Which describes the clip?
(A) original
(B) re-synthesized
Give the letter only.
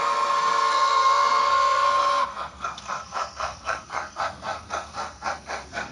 B